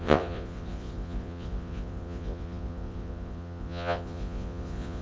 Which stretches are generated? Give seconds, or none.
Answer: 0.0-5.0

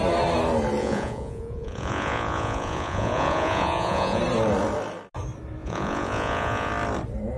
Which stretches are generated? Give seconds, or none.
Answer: 0.8-4.2; 5.6-6.7

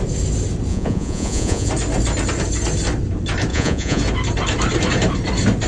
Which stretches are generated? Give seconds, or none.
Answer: 0.7-1.7; 3.5-4.0

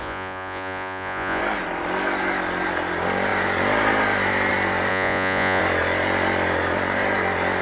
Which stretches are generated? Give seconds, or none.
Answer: 0.0-1.4; 4.9-5.6

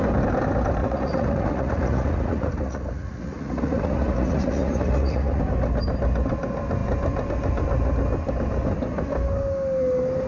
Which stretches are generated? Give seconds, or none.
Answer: 0.8-5.4

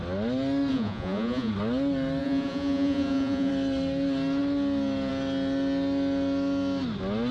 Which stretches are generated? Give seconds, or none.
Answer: 0.7-1.5; 2.2-3.5

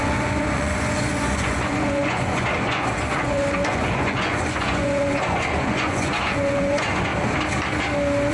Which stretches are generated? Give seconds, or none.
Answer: 0.0-7.1

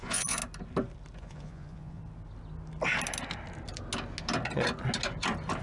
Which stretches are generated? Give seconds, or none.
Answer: 0.0-0.4; 1.2-2.0